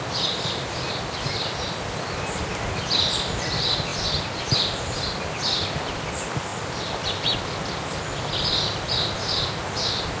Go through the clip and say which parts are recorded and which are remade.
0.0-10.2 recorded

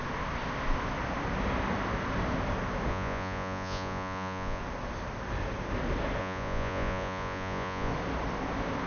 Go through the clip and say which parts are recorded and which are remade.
0.0-2.9 recorded; 2.9-4.6 remade; 4.6-6.2 recorded; 6.2-7.9 remade; 7.9-8.9 recorded

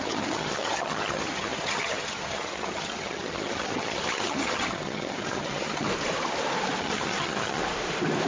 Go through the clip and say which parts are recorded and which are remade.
0.0-5.9 remade; 5.9-6.8 recorded; 6.8-7.6 remade; 7.6-8.3 recorded

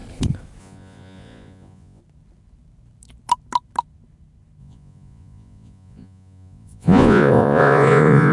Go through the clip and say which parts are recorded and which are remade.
0.0-0.6 recorded; 0.6-2.0 remade; 2.0-4.6 recorded; 4.6-8.3 remade

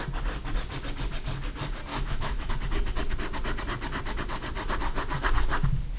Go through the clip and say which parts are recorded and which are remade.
0.0-1.9 recorded; 1.9-2.5 remade; 2.5-6.0 recorded

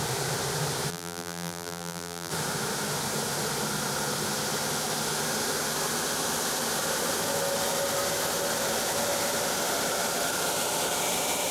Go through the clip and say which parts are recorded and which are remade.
0.0-0.9 recorded; 0.9-2.3 remade; 2.3-11.5 recorded

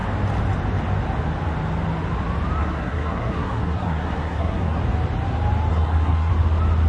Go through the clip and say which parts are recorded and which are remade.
0.0-2.6 recorded; 2.6-4.8 remade; 4.8-5.7 recorded; 5.7-6.3 remade; 6.3-6.9 recorded